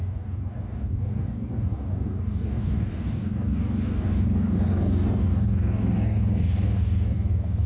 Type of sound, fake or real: fake